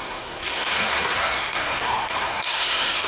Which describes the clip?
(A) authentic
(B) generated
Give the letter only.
B